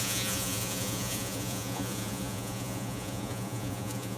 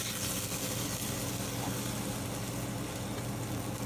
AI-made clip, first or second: first